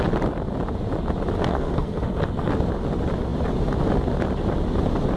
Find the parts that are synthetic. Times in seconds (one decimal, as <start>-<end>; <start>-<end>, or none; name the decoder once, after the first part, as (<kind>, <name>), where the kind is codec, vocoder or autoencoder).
1.5-2.5 (codec, SNAC)